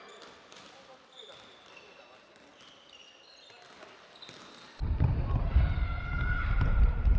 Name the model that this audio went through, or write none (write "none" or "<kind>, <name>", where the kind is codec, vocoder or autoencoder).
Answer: none